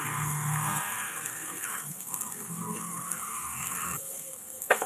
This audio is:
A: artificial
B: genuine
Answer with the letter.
A